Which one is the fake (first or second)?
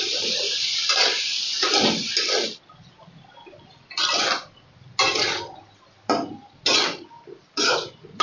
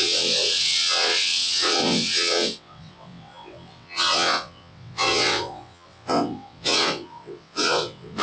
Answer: second